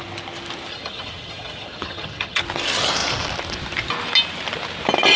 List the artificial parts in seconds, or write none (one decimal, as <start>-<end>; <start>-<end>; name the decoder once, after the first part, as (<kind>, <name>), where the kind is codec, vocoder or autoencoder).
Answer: 0.7-2.4 (vocoder, HiFi-GAN)